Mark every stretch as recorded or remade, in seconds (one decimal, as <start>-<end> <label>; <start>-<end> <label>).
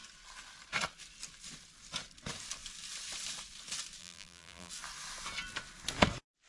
0.0-4.0 recorded; 4.0-4.7 remade; 4.7-6.5 recorded